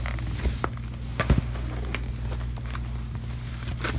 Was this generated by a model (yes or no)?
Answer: no